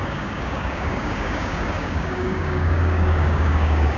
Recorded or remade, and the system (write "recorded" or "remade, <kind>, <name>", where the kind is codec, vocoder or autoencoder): remade, codec, DAC